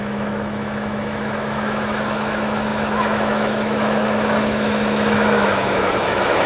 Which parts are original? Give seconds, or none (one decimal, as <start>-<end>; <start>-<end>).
none